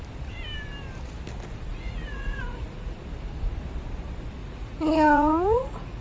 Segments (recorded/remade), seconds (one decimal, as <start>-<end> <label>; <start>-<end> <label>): 0.0-1.7 recorded; 1.7-3.0 remade; 3.0-4.4 recorded; 4.4-6.0 remade